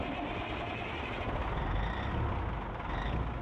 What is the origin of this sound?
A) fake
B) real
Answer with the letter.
B